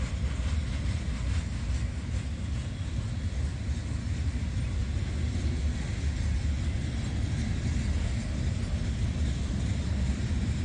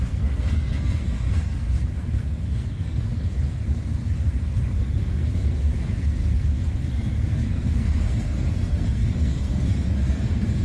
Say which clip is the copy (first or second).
second